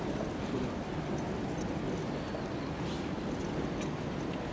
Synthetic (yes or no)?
no